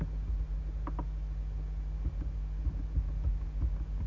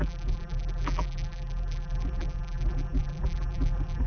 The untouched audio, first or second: first